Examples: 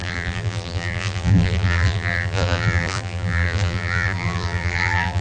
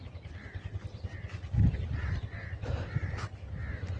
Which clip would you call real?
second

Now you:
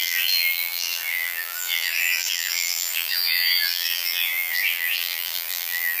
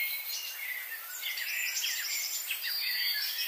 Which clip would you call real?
second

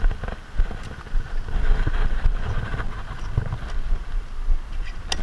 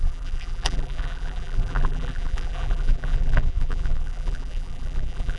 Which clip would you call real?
first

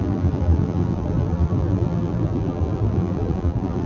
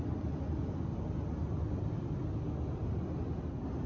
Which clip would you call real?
second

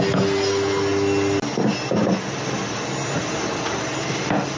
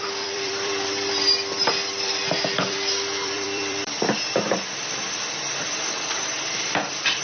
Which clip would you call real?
first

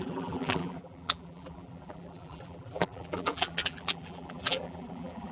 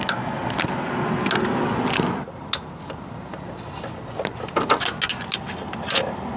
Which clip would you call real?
second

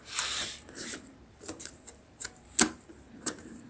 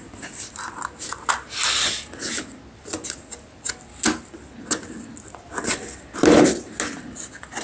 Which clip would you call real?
second